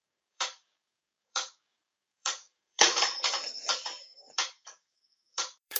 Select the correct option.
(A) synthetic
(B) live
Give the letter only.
A